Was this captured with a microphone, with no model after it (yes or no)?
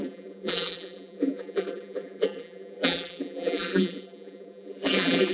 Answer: no